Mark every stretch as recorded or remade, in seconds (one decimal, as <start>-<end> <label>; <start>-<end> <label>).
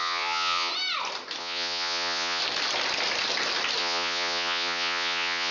0.0-0.7 remade; 0.7-1.4 recorded; 1.4-2.4 remade; 2.4-3.8 recorded; 3.8-5.5 remade